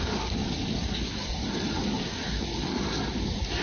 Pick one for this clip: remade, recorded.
recorded